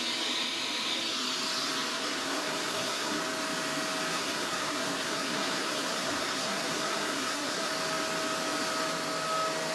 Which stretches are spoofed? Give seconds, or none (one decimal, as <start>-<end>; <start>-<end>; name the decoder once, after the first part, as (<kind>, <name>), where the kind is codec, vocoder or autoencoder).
1.9-3.2 (codec, SNAC); 4.1-7.7